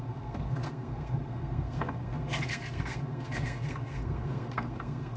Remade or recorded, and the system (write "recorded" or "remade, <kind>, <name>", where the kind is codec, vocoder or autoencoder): remade, codec, SNAC